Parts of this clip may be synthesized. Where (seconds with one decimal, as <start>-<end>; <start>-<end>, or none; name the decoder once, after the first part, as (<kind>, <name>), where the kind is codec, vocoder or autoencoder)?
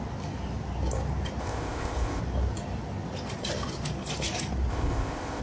1.4-2.2 (codec, ZipCodec); 4.7-5.4